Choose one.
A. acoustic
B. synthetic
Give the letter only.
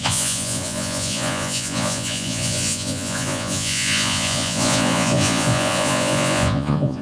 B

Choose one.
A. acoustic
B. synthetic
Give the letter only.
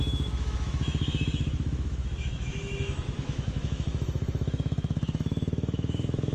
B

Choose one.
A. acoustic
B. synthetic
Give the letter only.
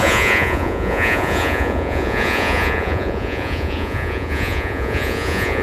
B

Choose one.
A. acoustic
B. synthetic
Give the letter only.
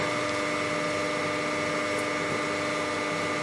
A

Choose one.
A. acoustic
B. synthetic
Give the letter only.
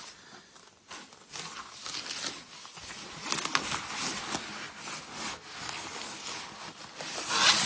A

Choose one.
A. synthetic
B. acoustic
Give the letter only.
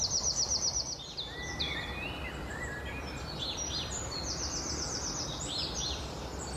B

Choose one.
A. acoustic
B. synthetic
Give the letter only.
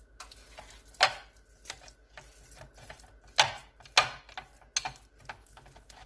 A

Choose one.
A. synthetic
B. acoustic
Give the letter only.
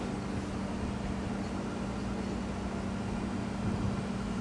B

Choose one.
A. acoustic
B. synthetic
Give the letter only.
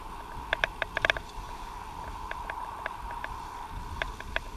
A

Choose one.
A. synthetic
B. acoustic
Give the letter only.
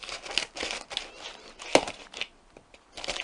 B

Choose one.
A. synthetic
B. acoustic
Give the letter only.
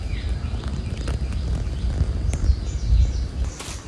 B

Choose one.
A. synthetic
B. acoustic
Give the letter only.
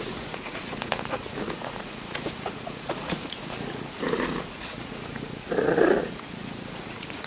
A